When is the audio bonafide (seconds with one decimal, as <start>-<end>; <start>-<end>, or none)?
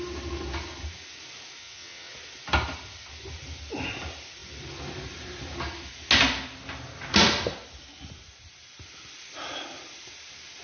0.0-1.6; 2.1-10.6